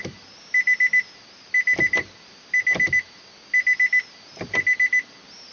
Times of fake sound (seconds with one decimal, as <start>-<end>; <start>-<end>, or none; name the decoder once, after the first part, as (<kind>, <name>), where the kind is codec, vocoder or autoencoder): none